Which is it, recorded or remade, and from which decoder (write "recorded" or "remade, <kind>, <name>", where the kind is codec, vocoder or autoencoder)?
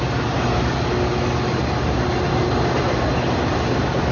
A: recorded